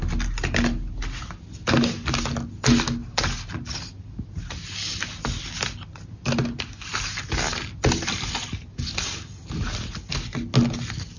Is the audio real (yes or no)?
yes